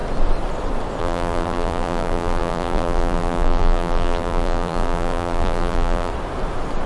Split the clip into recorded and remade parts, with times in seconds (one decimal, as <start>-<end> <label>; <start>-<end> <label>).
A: 0.0-1.0 recorded; 1.0-6.1 remade; 6.1-6.9 recorded